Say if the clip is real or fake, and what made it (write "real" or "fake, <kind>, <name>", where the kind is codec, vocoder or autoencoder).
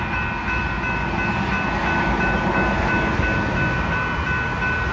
real